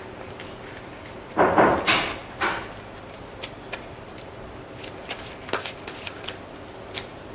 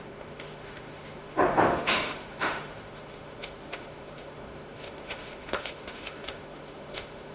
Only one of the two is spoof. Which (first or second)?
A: second